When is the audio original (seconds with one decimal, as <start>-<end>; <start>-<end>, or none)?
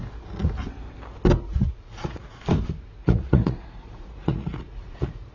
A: 0.0-1.5; 2.4-3.0